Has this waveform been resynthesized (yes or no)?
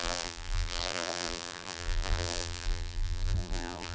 yes